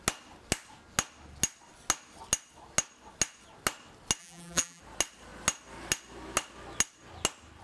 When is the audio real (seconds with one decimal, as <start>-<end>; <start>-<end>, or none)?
0.0-4.2; 4.8-7.6